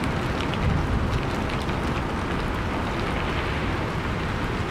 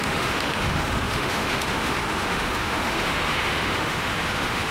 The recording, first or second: first